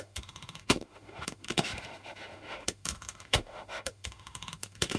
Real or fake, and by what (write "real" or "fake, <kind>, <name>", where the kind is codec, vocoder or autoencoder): fake, autoencoder, DAC-VAE